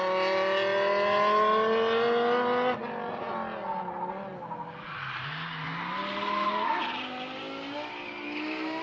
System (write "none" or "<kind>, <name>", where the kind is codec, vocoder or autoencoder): none